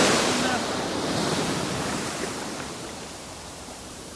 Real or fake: fake